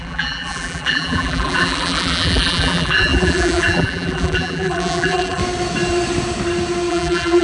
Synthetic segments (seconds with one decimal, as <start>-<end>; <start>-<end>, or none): 0.0-5.4; 6.9-7.4